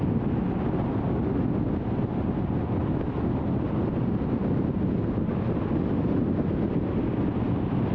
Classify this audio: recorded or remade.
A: recorded